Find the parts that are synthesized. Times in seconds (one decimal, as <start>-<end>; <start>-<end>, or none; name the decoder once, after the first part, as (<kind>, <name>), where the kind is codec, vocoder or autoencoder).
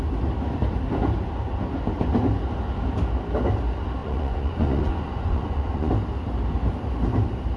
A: 4.0-5.9 (vocoder, Vocos)